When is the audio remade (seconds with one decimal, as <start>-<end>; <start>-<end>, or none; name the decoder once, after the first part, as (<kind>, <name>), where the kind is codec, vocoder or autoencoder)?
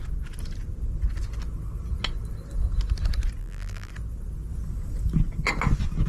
3.4-3.9 (vocoder, BigVGAN v2)